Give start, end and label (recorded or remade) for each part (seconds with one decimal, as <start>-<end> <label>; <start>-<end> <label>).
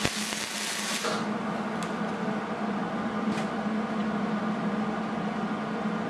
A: 0.0-6.1 recorded